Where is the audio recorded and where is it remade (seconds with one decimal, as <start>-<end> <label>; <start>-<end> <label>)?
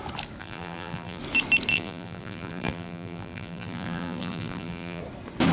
0.0-0.4 recorded; 0.4-1.2 remade; 1.2-1.7 recorded; 1.7-5.0 remade; 5.0-5.5 recorded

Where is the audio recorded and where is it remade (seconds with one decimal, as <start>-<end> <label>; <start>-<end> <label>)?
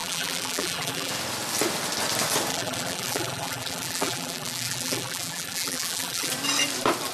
0.0-1.1 remade; 1.1-2.5 recorded; 2.5-6.3 remade; 6.3-7.1 recorded